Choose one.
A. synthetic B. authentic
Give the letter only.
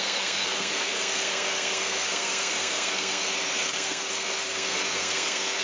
A